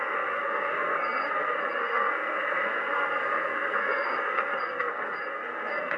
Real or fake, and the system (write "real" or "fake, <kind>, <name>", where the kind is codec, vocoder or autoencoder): fake, codec, SNAC